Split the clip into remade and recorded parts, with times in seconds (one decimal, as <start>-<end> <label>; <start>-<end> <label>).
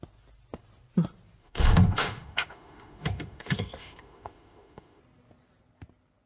0.0-1.4 recorded; 1.4-5.0 remade; 5.0-6.3 recorded